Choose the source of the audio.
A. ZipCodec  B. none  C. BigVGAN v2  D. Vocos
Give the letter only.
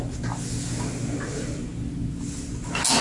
B